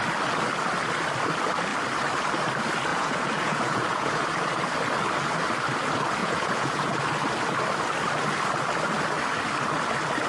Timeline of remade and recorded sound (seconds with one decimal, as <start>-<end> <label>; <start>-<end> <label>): 0.0-2.9 recorded; 2.9-4.2 remade; 4.2-6.2 recorded; 6.2-6.9 remade; 6.9-10.3 recorded